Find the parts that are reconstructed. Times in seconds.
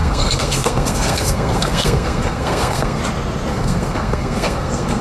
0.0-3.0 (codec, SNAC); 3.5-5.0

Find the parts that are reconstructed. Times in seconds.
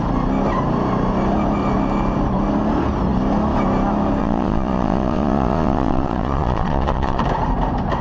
4.2-7.2 (vocoder, Vocos)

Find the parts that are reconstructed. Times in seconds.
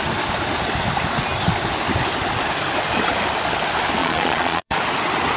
4.0-4.8 (vocoder, Vocos)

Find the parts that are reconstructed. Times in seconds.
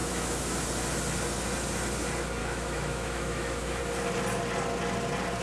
0.0-0.6 (autoencoder, DAC-VAE); 2.4-3.8